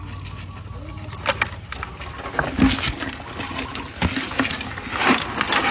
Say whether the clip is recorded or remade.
recorded